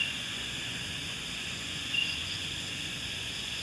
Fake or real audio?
fake